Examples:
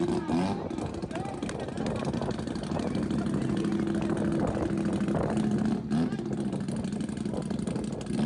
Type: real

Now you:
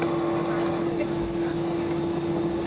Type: real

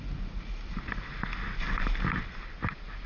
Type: real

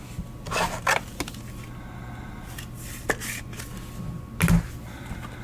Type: real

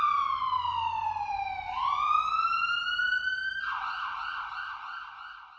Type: real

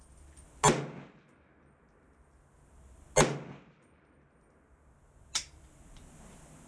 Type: real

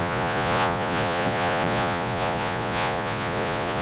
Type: fake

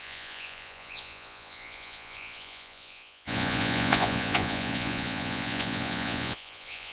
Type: fake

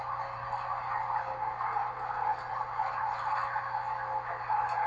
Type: real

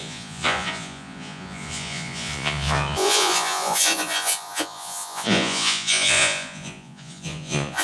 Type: fake